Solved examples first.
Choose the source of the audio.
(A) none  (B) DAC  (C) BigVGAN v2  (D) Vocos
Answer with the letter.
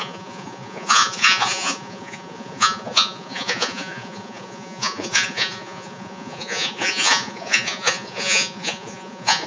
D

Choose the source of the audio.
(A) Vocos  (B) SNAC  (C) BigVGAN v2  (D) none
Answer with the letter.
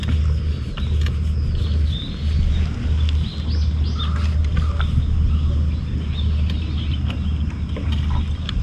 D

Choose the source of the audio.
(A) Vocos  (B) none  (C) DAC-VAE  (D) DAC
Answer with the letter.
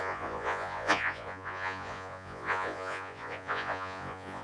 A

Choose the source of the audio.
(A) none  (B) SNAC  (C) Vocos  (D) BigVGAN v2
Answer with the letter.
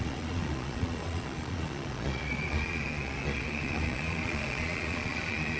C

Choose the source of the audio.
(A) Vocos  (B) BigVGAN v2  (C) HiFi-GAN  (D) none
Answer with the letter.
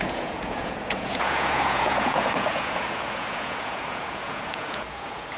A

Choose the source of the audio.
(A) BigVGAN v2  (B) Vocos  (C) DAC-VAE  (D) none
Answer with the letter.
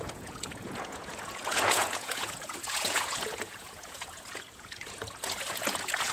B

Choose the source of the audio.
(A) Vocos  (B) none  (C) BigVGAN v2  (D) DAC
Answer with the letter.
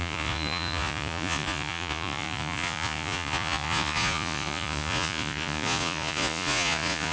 A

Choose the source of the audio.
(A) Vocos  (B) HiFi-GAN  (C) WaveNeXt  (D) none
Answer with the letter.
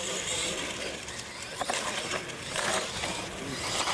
D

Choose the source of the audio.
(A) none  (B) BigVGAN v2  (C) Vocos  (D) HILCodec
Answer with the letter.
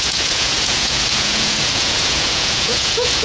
C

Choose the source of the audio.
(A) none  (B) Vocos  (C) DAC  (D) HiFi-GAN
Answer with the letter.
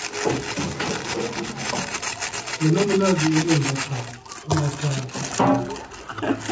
A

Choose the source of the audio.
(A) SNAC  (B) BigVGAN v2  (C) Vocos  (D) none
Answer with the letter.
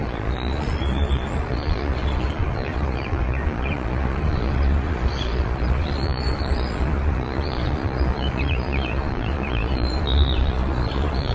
C